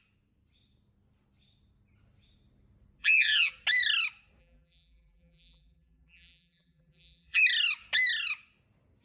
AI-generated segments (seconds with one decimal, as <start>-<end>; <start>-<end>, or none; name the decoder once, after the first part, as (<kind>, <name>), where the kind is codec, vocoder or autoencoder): 3.0-3.5 (vocoder, BigVGAN v2); 4.4-7.4